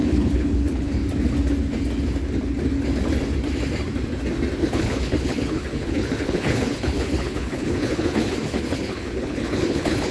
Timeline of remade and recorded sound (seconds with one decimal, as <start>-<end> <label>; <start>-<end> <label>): 0.0-1.0 remade; 1.0-4.6 recorded; 4.6-10.1 remade